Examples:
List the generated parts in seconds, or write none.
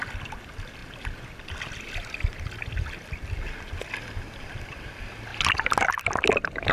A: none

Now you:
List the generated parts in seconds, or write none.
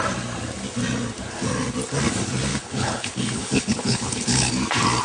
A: 2.5-4.5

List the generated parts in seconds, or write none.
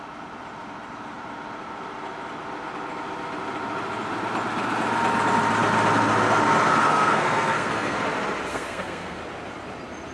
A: 6.8-8.0; 8.5-9.2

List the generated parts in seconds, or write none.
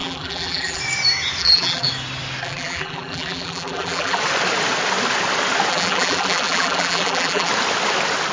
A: 0.0-0.8; 1.4-1.9; 2.4-4.2; 5.7-7.5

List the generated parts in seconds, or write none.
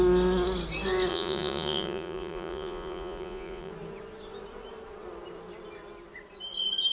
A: 1.1-3.7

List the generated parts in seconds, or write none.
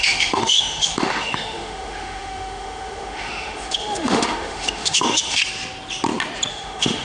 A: 0.0-5.4; 6.5-7.0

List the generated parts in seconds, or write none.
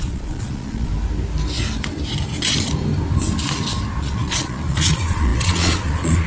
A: 0.0-0.9; 4.0-6.3